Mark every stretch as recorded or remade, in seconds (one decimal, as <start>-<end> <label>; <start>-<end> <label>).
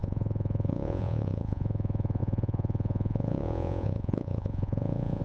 0.0-5.2 remade